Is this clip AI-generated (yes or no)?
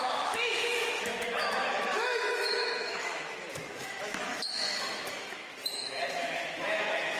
yes